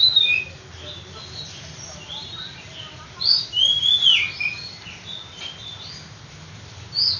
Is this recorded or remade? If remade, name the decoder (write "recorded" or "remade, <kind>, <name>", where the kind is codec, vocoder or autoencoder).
recorded